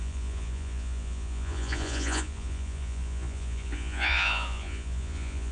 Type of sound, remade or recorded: remade